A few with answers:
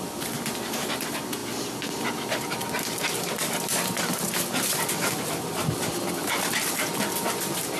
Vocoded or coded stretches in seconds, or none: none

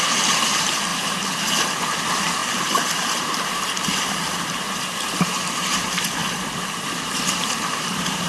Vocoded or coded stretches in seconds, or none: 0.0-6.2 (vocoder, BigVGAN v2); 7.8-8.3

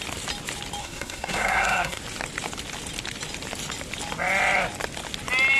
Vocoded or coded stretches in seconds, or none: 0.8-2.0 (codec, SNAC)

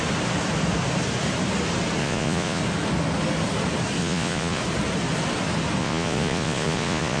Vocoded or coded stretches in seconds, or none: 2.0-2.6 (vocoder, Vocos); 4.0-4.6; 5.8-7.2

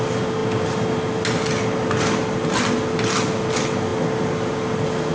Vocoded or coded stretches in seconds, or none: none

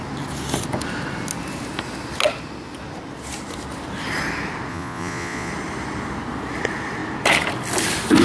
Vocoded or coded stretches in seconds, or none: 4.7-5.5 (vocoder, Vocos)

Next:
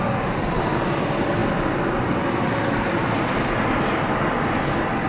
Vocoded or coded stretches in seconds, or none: none